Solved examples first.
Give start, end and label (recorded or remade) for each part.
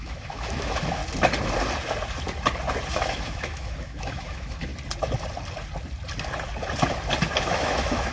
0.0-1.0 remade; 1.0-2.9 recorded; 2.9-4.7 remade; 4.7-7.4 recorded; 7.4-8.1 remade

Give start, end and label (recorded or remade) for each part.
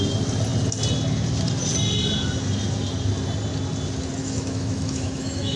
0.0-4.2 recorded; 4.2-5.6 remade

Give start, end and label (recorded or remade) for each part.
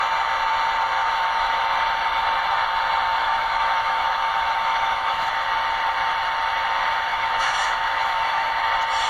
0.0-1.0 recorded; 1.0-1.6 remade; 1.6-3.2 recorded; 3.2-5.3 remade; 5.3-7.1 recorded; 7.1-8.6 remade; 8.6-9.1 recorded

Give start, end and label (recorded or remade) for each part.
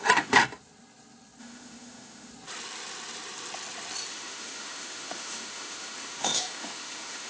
0.0-0.4 remade; 0.4-1.4 recorded; 1.4-2.3 remade; 2.3-4.1 recorded; 4.1-7.3 remade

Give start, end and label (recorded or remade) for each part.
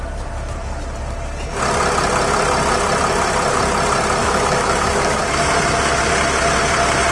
0.0-4.2 recorded; 4.2-5.5 remade; 5.5-7.1 recorded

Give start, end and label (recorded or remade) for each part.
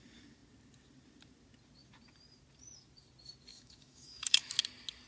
0.0-3.5 recorded; 3.5-4.5 remade; 4.5-5.1 recorded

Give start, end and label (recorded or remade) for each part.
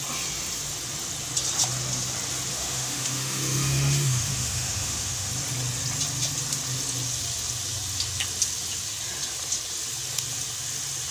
0.0-2.5 recorded; 2.5-5.3 remade; 5.3-11.1 recorded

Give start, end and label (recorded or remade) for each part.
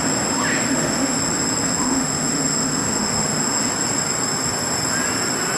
0.0-0.7 recorded; 0.7-1.2 remade; 1.2-1.8 recorded; 1.8-3.7 remade; 3.7-5.6 recorded